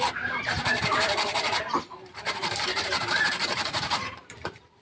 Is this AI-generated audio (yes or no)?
yes